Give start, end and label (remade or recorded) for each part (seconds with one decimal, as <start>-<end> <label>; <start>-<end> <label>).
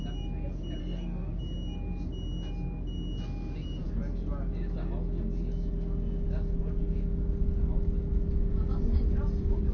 0.0-0.8 recorded; 0.8-1.4 remade; 1.4-9.7 recorded